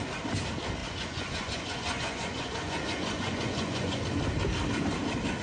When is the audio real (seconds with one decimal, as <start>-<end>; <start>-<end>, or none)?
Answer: 0.0-0.8; 4.0-5.4